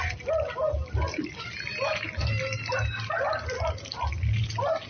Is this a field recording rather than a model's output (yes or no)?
yes